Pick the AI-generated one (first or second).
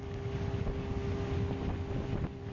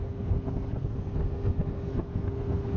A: second